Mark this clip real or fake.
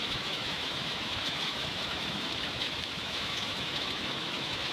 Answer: fake